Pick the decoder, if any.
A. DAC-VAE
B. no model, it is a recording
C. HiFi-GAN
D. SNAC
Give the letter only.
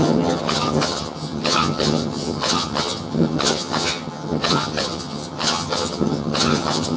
C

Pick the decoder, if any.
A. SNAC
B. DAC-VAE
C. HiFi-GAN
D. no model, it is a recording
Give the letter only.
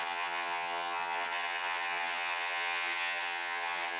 C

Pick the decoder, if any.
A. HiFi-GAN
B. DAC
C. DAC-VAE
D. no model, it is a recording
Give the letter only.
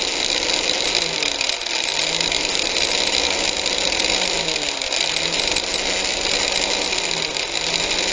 D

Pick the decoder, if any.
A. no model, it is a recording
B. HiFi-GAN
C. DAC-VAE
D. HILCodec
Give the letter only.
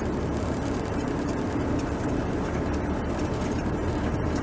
A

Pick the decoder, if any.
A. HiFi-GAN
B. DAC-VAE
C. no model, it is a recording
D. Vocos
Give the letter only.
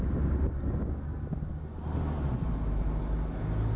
C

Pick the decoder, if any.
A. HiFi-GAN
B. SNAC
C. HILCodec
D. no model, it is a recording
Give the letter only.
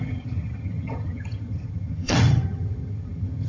A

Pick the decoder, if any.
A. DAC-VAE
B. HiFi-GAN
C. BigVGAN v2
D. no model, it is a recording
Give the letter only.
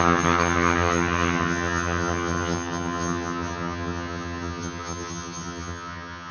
B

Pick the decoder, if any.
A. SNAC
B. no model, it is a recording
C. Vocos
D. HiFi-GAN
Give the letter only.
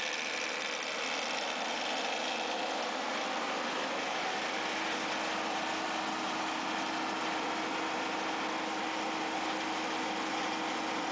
B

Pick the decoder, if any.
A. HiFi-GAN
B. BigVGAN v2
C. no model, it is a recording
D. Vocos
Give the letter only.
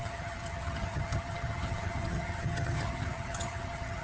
A